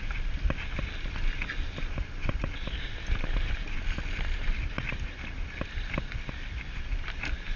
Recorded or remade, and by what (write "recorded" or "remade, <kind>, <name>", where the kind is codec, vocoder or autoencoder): recorded